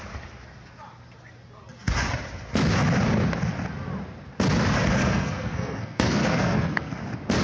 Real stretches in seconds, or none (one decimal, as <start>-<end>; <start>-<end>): 0.0-5.0; 7.0-7.4